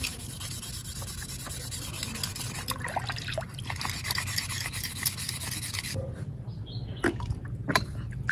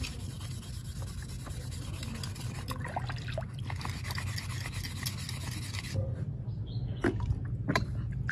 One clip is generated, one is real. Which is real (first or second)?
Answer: second